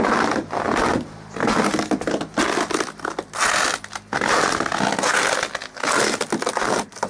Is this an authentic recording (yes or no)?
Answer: yes